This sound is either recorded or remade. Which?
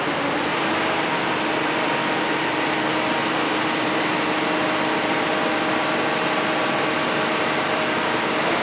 recorded